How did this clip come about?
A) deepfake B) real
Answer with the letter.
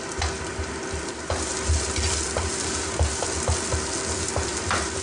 B